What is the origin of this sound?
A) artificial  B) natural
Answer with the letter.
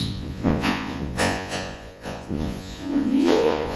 A